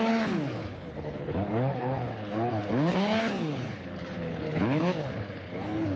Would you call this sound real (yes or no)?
no